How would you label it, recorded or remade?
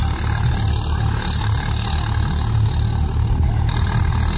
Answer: recorded